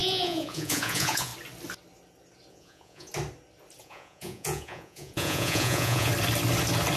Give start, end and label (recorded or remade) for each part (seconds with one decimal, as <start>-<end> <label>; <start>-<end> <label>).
0.0-1.3 remade; 1.3-2.5 recorded; 2.5-3.1 remade; 3.1-3.8 recorded; 3.8-6.1 remade; 6.1-7.0 recorded